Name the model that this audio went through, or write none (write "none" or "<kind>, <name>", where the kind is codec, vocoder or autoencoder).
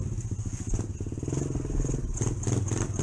none